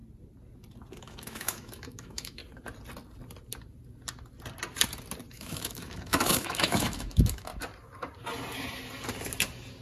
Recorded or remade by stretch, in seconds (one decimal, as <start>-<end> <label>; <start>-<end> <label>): 0.0-1.0 recorded; 1.0-2.4 remade; 2.4-5.3 recorded; 5.3-7.5 remade; 7.5-9.8 recorded